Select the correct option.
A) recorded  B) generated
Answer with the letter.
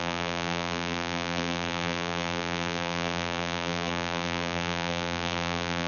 B